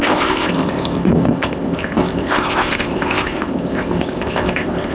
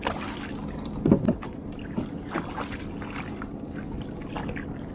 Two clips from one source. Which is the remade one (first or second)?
first